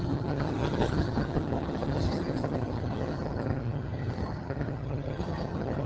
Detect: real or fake fake